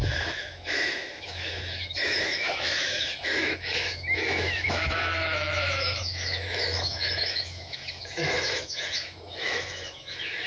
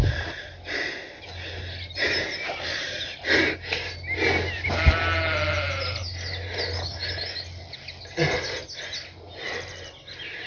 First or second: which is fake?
first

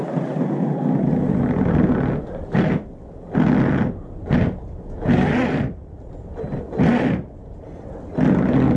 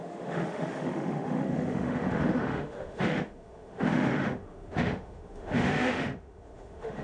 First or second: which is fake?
second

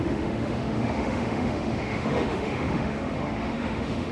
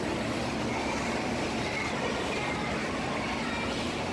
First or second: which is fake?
first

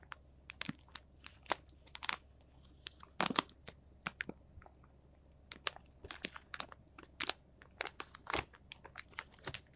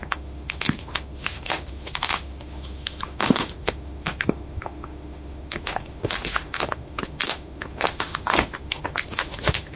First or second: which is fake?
second